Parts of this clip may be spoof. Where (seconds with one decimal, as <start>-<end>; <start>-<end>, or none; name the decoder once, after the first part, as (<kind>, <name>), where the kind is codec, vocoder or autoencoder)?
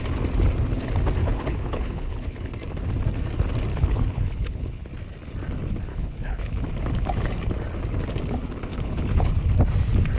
1.2-2.5 (codec, HILCodec); 3.7-4.9; 5.9-6.6; 8.7-9.3